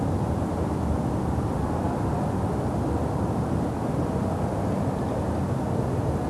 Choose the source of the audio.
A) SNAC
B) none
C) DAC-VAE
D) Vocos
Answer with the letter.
B